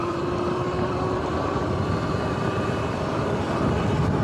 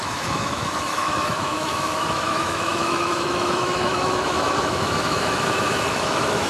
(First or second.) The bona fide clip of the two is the first